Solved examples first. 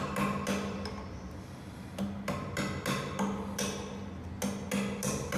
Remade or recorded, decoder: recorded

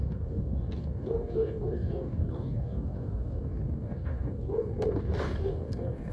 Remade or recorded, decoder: remade, codec, DAC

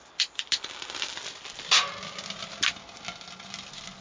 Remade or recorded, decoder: recorded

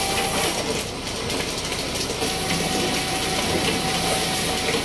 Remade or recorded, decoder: recorded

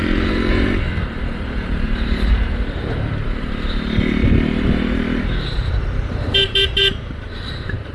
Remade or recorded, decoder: remade, vocoder, BigVGAN v2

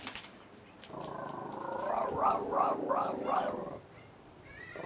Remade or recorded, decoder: remade, vocoder, BigVGAN v2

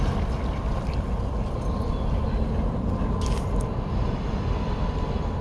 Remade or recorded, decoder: recorded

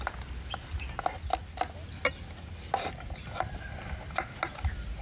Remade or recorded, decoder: recorded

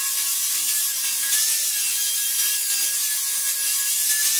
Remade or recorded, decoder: recorded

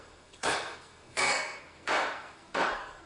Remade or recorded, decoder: remade, codec, SNAC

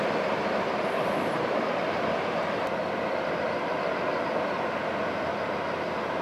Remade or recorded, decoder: remade, vocoder, BigVGAN v2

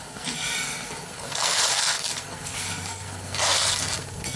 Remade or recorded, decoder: remade, codec, SNAC